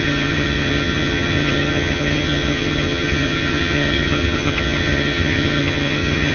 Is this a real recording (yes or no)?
no